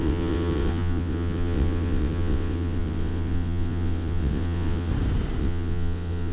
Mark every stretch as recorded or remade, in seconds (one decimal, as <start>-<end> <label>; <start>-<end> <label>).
0.0-4.9 remade; 4.9-5.4 recorded; 5.4-6.3 remade